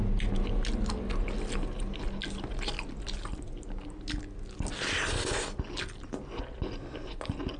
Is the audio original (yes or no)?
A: yes